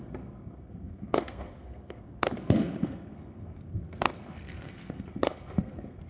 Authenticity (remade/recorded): remade